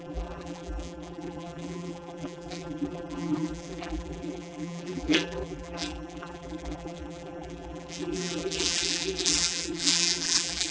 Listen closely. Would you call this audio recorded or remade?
remade